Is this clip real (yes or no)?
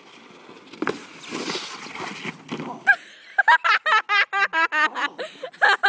yes